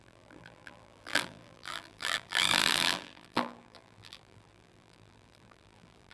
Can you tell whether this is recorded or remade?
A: remade